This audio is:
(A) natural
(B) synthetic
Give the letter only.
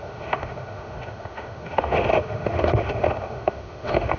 B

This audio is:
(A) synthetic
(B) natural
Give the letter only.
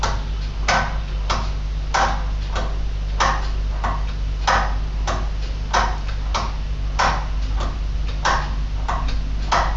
B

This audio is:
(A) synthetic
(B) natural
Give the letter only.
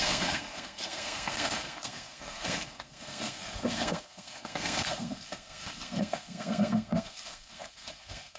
A